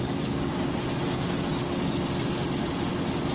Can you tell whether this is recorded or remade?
recorded